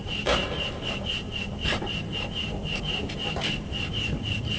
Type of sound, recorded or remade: remade